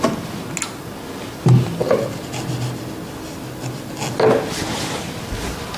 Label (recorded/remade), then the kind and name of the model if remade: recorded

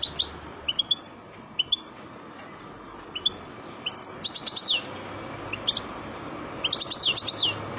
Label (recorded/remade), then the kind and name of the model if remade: recorded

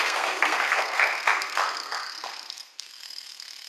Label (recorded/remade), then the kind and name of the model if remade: remade, codec, SNAC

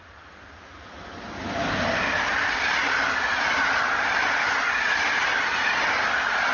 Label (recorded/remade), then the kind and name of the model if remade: recorded